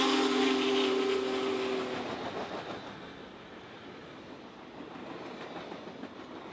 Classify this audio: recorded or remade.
recorded